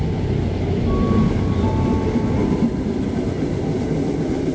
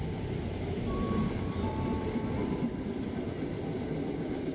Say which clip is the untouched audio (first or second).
first